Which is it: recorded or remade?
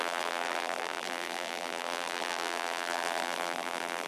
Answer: remade